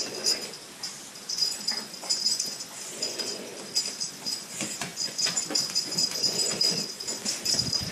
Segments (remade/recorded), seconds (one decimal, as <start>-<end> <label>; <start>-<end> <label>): 0.0-0.5 remade; 0.5-1.3 recorded; 1.3-3.5 remade; 3.5-4.1 recorded; 4.1-7.9 remade